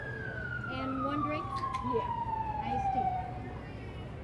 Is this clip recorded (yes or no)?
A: yes